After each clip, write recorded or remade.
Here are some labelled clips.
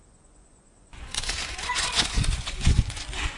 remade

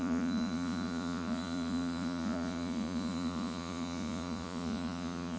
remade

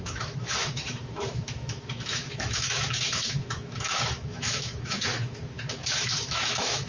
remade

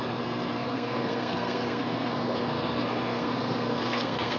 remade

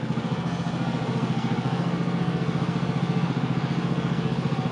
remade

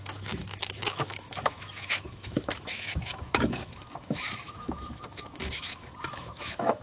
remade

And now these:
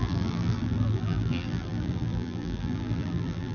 remade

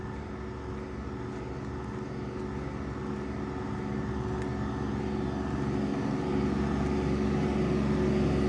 recorded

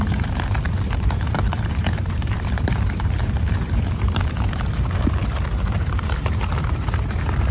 remade